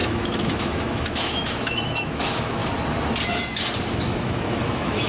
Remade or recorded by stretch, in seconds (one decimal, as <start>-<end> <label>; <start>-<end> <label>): 0.0-2.6 remade; 2.6-3.9 recorded; 3.9-5.1 remade